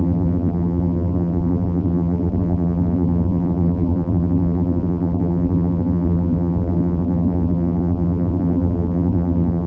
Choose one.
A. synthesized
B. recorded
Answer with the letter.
A